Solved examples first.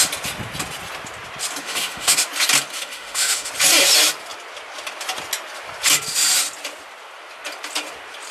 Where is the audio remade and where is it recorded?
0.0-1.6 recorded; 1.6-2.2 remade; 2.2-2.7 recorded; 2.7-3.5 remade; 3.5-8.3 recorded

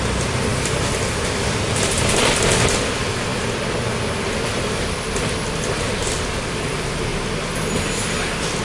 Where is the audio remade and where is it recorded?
0.0-8.6 recorded

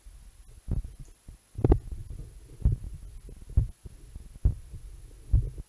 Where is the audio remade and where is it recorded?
0.0-5.7 recorded

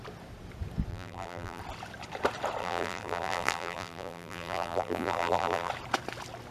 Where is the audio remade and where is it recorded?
0.0-0.9 recorded; 0.9-1.6 remade; 1.6-2.6 recorded; 2.6-5.7 remade; 5.7-6.5 recorded

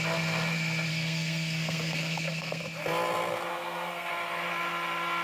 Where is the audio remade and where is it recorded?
0.0-0.9 recorded; 0.9-2.6 remade; 2.6-3.5 recorded; 3.5-4.1 remade; 4.1-5.2 recorded

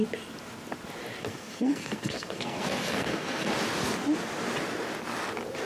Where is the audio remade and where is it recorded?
0.0-1.2 recorded; 1.2-3.5 remade; 3.5-5.7 recorded

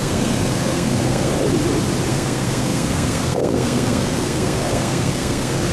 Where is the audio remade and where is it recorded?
0.0-1.3 remade; 1.3-2.1 recorded; 2.1-5.7 remade